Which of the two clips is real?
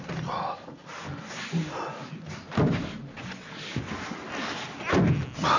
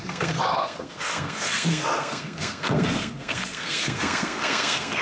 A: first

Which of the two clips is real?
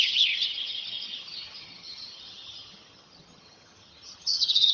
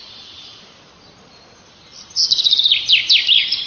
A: second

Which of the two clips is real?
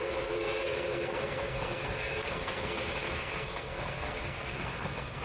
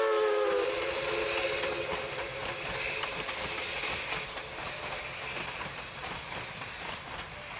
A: second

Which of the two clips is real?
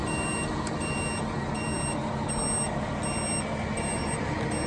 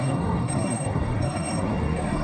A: first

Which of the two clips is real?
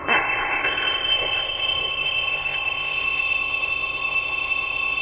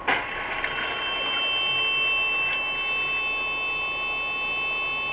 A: second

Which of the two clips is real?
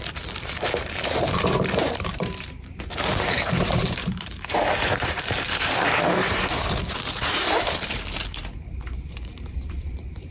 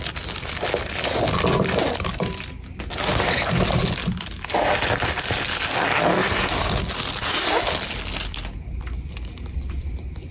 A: second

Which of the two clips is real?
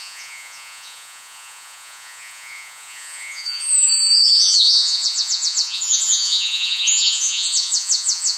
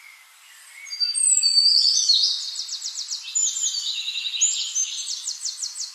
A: second